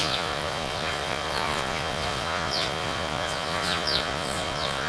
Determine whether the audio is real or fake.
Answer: fake